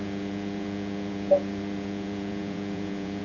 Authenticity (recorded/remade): remade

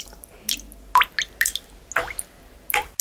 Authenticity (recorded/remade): recorded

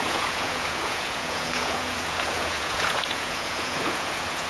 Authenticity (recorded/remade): remade